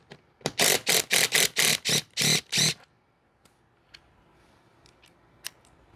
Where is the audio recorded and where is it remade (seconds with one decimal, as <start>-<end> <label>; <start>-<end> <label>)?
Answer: 0.0-6.0 recorded